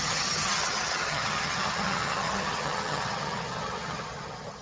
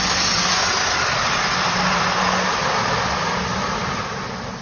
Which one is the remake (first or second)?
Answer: first